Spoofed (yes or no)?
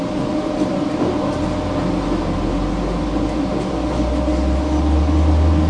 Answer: no